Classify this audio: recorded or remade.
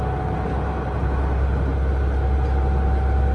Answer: recorded